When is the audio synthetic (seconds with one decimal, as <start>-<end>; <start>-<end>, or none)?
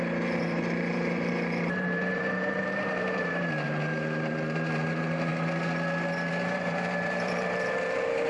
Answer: 0.0-5.3; 6.3-8.3